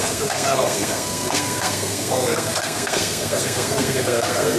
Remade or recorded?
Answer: remade